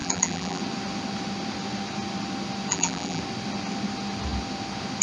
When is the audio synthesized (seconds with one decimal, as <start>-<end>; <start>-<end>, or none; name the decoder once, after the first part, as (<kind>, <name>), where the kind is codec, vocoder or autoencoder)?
0.0-0.6 (vocoder, BigVGAN v2); 2.7-3.2

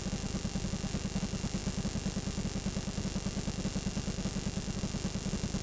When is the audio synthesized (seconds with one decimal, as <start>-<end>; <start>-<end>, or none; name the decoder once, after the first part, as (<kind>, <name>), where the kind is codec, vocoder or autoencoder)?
none

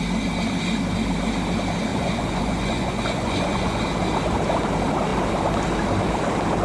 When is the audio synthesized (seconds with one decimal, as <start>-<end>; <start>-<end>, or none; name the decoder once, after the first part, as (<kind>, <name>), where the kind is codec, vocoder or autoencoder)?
1.9-3.8 (vocoder, Vocos)

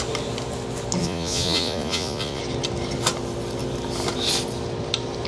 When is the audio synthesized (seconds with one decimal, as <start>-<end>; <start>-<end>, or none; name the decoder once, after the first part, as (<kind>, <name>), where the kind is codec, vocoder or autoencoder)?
1.0-2.4 (vocoder, Vocos)